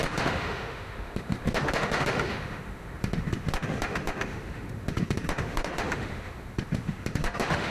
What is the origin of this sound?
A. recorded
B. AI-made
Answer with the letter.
B